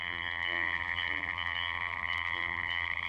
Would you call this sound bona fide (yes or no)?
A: no